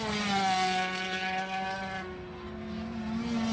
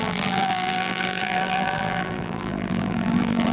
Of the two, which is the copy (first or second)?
second